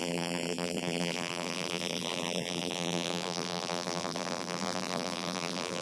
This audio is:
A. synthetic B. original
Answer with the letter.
A